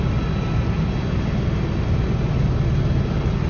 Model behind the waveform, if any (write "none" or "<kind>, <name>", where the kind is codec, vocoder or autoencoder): none